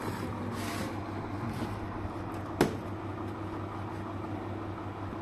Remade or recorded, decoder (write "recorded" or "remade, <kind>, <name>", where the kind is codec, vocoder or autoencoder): recorded